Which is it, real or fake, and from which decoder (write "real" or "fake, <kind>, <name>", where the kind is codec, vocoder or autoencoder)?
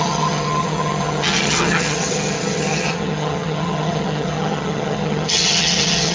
fake, vocoder, HiFi-GAN